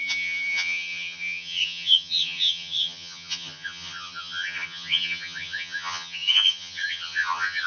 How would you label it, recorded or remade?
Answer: remade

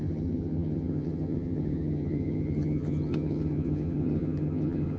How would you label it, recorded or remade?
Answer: remade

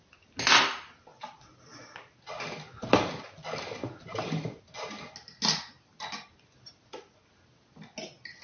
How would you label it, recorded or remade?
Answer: recorded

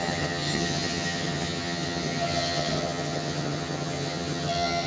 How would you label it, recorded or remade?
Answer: remade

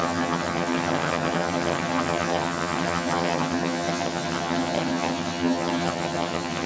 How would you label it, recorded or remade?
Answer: remade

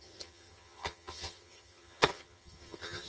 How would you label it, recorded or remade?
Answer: remade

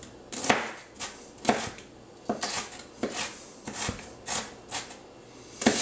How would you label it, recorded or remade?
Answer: recorded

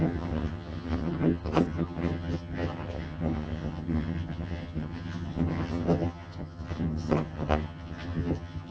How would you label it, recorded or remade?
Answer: remade